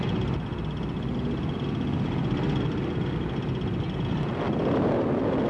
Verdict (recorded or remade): recorded